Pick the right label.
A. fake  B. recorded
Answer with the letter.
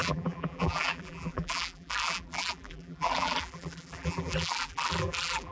A